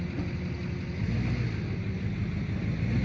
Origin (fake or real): real